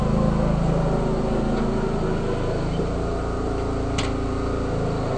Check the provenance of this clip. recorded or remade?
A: recorded